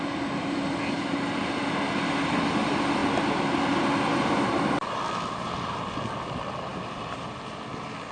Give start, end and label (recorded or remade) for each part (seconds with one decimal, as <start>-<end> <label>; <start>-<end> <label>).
0.0-8.1 recorded